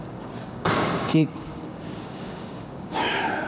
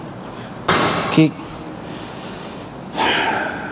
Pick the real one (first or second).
second